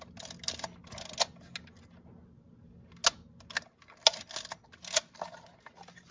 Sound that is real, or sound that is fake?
real